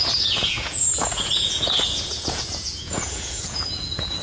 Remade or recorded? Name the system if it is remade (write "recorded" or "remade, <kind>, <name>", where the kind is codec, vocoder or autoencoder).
remade, vocoder, Vocos